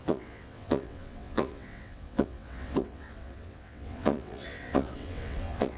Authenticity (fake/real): fake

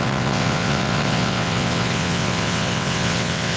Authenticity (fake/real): fake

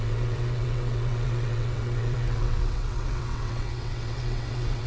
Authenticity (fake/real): fake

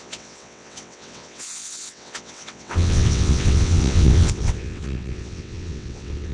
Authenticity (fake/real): fake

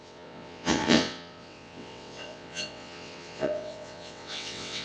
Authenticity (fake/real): fake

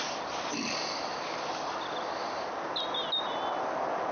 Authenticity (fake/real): real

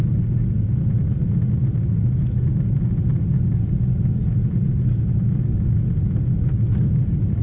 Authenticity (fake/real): real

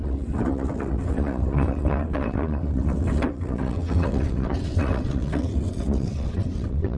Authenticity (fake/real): fake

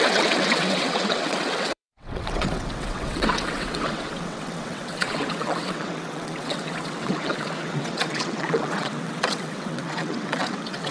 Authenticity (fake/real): fake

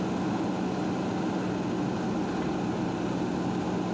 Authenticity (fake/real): real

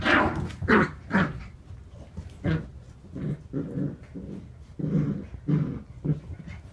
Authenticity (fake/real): real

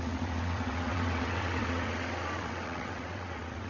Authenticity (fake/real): fake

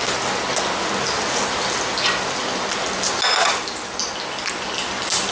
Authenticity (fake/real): real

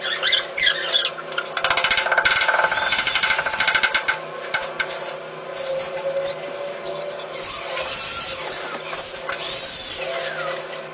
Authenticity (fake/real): real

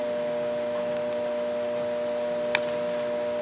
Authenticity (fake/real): real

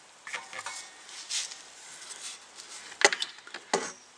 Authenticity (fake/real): real